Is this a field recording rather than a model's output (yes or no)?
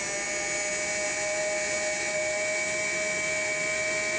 yes